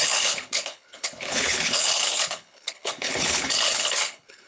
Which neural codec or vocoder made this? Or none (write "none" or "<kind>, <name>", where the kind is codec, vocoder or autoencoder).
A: codec, HILCodec